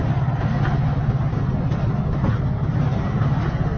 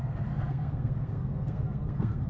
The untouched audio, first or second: first